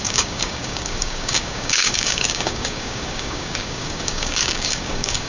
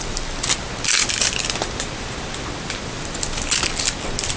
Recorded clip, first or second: second